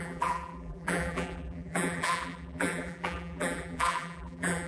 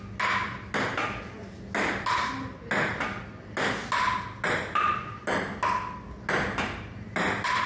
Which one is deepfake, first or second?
first